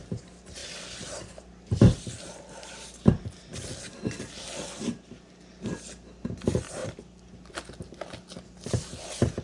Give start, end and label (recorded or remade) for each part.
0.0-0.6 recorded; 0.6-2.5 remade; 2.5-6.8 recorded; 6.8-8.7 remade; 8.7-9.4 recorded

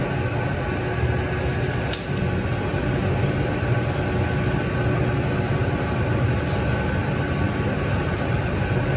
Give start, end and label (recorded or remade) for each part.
0.0-5.6 recorded; 5.6-6.4 remade; 6.4-9.0 recorded

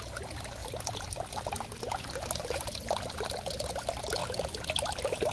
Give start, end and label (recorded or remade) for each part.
0.0-0.6 remade; 0.6-3.8 recorded; 3.8-4.2 remade; 4.2-5.3 recorded